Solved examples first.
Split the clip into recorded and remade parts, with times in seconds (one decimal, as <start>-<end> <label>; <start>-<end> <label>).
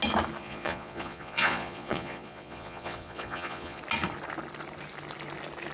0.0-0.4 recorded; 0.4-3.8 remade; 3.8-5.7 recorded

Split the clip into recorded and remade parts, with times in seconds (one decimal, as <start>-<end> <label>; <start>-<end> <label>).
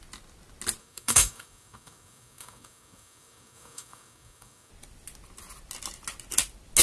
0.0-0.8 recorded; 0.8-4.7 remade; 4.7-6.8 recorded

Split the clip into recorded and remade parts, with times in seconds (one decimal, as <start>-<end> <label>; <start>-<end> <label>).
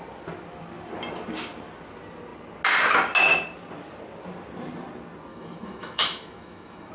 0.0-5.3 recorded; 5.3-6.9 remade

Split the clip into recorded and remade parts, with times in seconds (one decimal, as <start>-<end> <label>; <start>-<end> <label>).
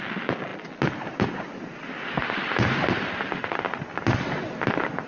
0.0-5.1 recorded